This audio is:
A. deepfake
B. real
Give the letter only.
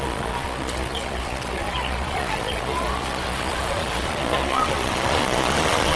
A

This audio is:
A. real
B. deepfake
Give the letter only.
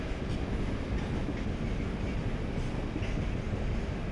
A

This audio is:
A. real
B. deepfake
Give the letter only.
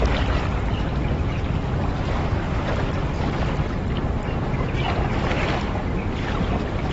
A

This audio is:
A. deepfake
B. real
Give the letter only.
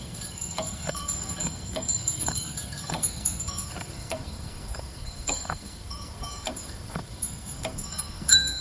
A